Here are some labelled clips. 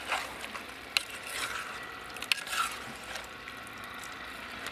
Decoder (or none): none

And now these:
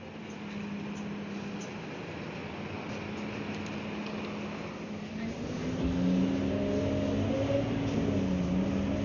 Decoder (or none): none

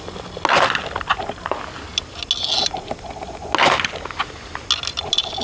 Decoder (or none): none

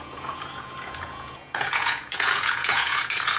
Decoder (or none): vocoder, Vocos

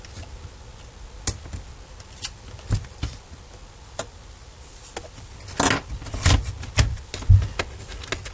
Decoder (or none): none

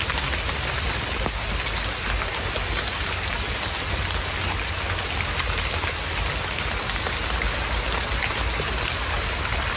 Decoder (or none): none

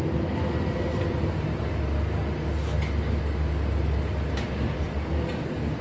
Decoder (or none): none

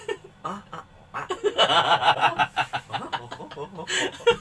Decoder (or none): none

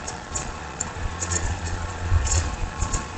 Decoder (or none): vocoder, Vocos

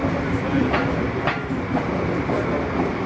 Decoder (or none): none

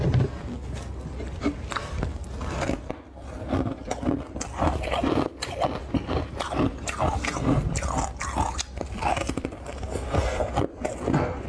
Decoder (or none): none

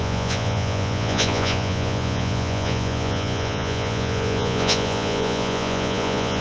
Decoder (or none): vocoder, Vocos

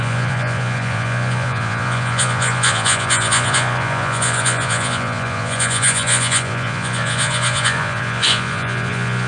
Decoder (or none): vocoder, Vocos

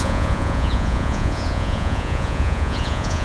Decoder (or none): vocoder, Vocos